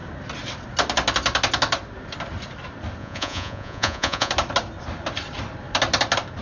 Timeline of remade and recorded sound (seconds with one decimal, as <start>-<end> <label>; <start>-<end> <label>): 0.0-3.0 recorded; 3.0-4.3 remade; 4.3-6.4 recorded